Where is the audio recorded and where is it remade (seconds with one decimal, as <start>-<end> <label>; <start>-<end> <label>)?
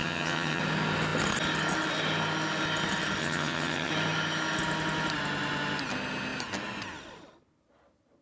0.0-0.6 remade; 0.6-3.2 recorded; 3.2-3.9 remade; 3.9-8.2 recorded